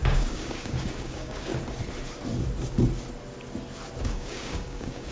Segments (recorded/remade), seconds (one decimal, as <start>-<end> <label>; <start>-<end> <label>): 0.0-1.5 remade; 1.5-4.0 recorded; 4.0-5.1 remade